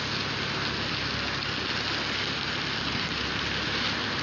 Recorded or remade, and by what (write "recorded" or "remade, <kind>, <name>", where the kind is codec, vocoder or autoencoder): recorded